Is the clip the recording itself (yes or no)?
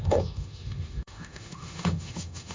no